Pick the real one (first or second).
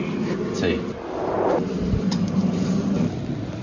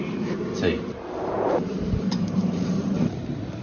first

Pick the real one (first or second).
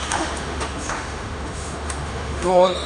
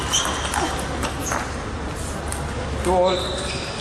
second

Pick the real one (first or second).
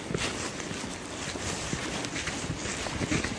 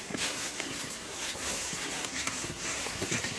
first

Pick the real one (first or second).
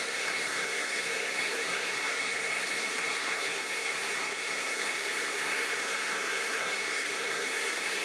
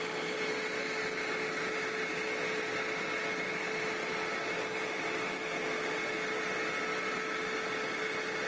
second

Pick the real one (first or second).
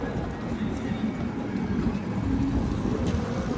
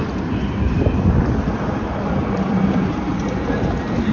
first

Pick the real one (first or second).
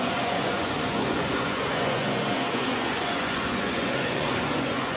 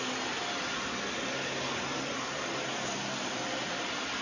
second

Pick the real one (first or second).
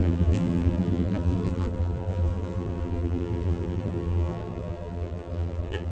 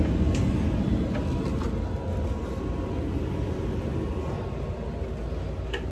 second